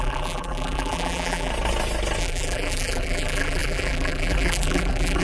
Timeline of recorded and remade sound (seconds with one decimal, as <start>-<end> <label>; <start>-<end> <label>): 0.0-1.5 remade; 1.5-2.2 recorded; 2.2-5.2 remade